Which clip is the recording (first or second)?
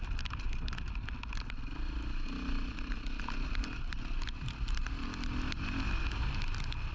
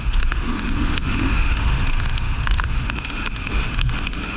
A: first